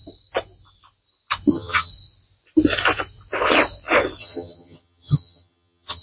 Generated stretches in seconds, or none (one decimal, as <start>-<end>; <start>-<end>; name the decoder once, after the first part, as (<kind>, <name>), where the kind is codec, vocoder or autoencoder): 1.5-1.9 (vocoder, HiFi-GAN); 4.2-6.0